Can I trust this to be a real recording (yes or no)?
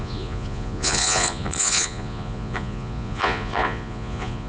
no